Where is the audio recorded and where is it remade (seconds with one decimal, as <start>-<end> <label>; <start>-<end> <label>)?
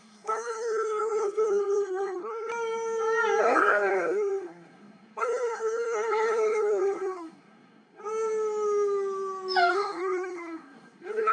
0.0-2.5 remade; 2.5-3.4 recorded; 3.4-8.0 remade; 8.0-9.7 recorded; 9.7-11.3 remade